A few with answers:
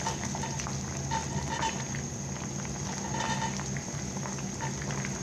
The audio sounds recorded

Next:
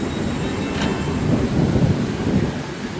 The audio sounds recorded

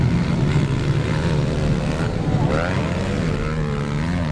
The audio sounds recorded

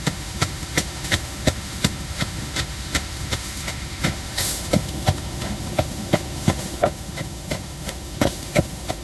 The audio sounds remade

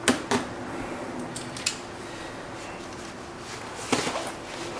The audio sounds recorded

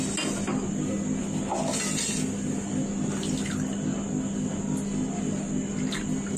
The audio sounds recorded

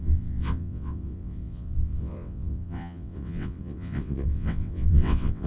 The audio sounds remade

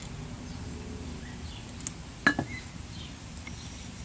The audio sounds recorded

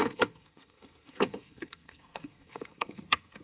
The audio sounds remade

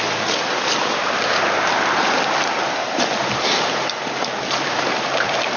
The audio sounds recorded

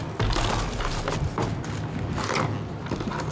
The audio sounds recorded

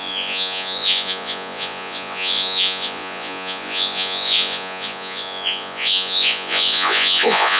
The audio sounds remade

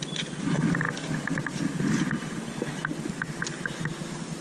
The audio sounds recorded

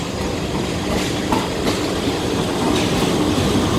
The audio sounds remade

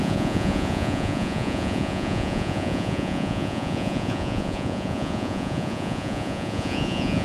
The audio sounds remade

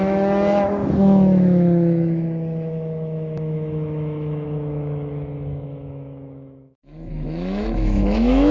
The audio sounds remade